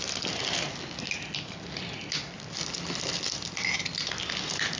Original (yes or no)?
yes